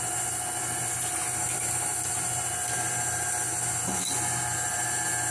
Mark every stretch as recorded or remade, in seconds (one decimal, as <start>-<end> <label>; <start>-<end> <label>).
0.0-5.3 recorded